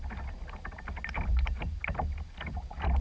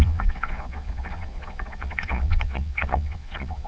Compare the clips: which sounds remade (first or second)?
second